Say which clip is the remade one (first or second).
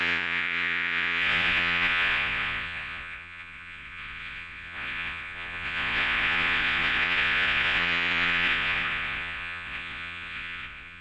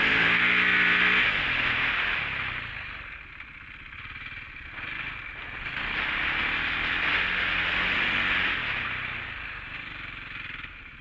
first